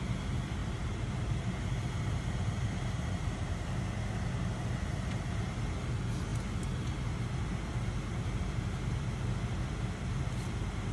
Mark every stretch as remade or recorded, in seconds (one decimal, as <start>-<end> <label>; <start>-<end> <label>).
0.0-0.6 recorded; 0.6-3.7 remade; 3.7-10.9 recorded